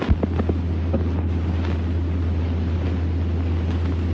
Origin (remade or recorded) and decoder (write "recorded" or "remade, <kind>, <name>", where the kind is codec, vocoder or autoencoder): recorded